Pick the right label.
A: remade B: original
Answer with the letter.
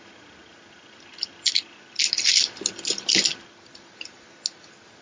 B